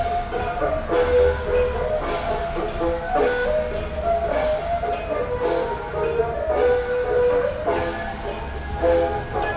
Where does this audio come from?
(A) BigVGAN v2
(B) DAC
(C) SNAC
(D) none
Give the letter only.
D